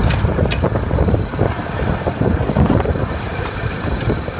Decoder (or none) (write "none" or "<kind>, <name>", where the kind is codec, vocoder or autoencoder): none